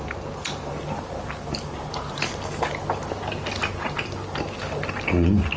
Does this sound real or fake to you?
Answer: real